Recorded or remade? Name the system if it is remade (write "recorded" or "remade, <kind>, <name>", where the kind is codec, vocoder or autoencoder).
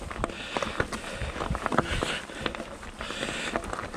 recorded